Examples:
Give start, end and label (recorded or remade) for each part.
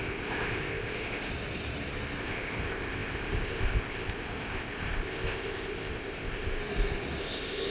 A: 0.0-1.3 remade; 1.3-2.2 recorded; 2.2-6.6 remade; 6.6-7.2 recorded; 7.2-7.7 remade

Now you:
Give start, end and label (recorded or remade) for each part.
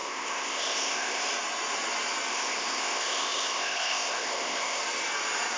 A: 0.0-1.2 remade; 1.2-2.3 recorded; 2.3-4.8 remade; 4.8-5.6 recorded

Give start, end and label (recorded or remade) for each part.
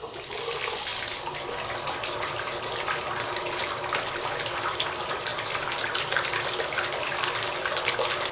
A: 0.0-8.3 recorded